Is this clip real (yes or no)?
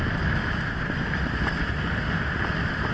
yes